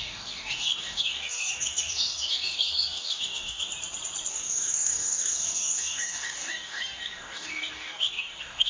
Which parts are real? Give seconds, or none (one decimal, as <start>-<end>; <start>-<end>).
3.7-4.3